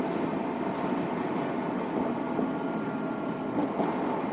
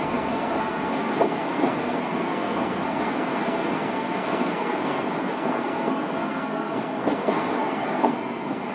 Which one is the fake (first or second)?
second